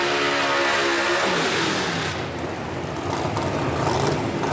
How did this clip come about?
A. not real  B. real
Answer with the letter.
B